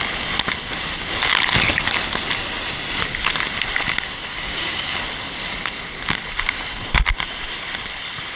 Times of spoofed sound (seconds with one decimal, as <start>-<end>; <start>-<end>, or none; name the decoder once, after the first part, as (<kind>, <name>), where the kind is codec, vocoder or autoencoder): 4.3-5.0 (codec, DAC)